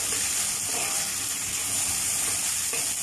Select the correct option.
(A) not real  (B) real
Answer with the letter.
B